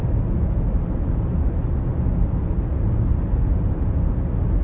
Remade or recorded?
recorded